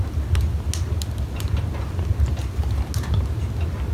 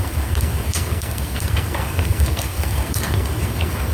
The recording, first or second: first